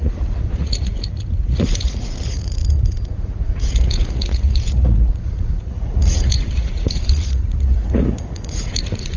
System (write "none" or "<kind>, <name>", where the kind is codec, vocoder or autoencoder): vocoder, Vocos